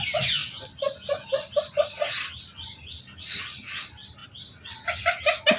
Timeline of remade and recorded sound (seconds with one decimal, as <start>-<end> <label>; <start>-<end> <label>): 0.0-0.4 recorded; 0.4-3.8 remade; 3.8-5.6 recorded